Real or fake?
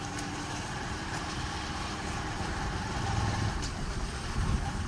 fake